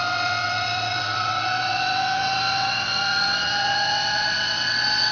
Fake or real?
fake